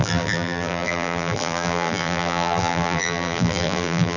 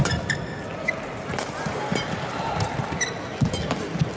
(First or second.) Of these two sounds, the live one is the second